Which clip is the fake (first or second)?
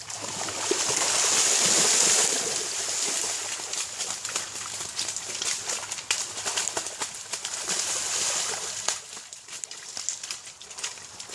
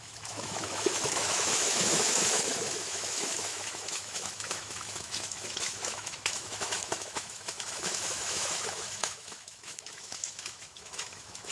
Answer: second